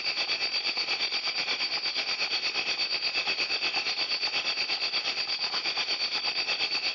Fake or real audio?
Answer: real